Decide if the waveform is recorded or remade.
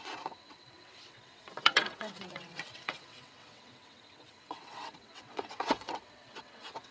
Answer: remade